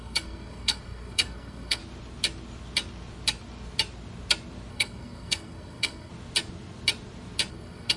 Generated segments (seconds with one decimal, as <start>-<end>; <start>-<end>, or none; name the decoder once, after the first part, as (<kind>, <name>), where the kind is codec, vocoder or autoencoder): 0.0-1.8 (codec, SNAC); 4.7-6.1; 7.5-8.0